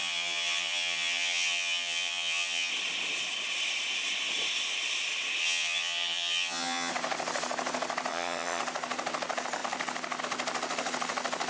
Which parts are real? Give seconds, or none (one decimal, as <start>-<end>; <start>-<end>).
2.7-5.4; 6.9-8.1; 8.6-11.5